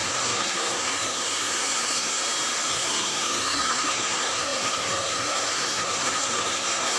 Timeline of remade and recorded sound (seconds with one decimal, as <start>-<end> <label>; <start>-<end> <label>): 0.0-2.2 remade; 2.2-2.7 recorded; 2.7-7.0 remade